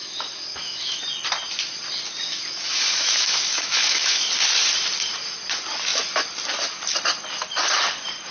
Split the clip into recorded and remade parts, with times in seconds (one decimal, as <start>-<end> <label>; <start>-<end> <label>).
0.0-1.0 remade; 1.0-2.3 recorded; 2.3-4.3 remade; 4.3-8.3 recorded